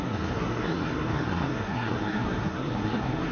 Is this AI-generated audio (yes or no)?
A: yes